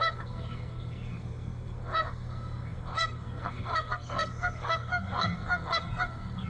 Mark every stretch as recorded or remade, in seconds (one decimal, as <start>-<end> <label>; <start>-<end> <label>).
0.0-6.5 remade